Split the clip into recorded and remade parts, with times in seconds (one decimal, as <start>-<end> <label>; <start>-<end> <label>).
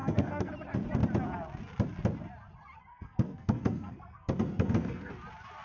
0.0-0.5 remade; 0.5-2.9 recorded; 2.9-5.1 remade; 5.1-5.6 recorded